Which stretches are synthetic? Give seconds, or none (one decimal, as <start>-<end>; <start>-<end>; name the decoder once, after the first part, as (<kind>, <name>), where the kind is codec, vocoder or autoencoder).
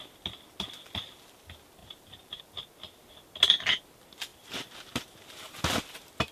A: 1.8-2.4 (vocoder, BigVGAN v2); 4.3-5.3